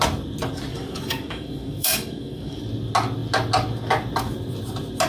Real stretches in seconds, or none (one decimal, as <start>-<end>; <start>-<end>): 0.0-0.7; 2.6-5.1